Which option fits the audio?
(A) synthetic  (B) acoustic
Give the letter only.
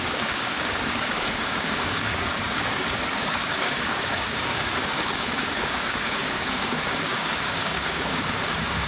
A